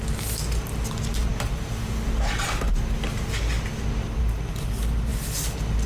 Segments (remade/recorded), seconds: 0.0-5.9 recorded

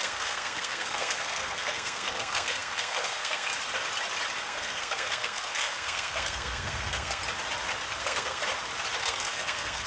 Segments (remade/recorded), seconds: 0.0-3.5 remade; 3.5-4.4 recorded; 4.4-7.2 remade; 7.2-8.0 recorded; 8.0-8.4 remade; 8.4-9.0 recorded; 9.0-9.9 remade

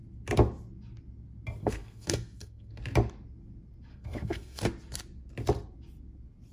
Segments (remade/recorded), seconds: 0.0-1.6 recorded; 1.6-2.8 remade; 2.8-3.9 recorded; 3.9-4.6 remade; 4.6-6.5 recorded

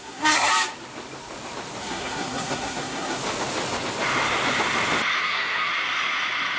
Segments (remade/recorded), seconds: 0.0-0.5 remade; 0.5-1.8 recorded; 1.8-3.2 remade; 3.2-5.2 recorded; 5.2-5.7 remade; 5.7-6.6 recorded

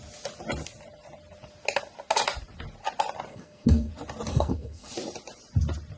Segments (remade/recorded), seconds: 0.0-3.3 recorded; 3.3-3.9 remade; 3.9-4.3 recorded; 4.3-4.9 remade; 4.9-6.0 recorded

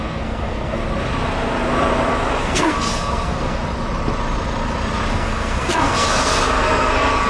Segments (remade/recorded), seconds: 0.0-0.8 remade; 0.8-2.4 recorded; 2.4-3.6 remade; 3.6-5.1 recorded; 5.1-7.3 remade

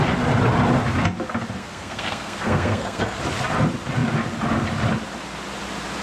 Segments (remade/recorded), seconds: 0.0-1.6 recorded; 1.6-3.2 remade; 3.2-6.0 recorded